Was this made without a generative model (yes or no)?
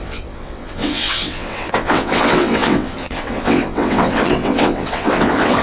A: no